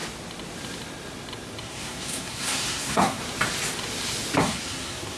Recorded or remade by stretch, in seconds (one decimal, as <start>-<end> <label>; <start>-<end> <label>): 0.0-1.6 recorded; 1.6-3.2 remade; 3.2-4.4 recorded; 4.4-5.2 remade